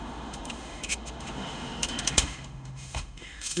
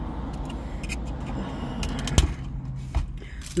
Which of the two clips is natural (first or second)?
second